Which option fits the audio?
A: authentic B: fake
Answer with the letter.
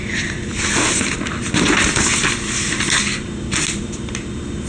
A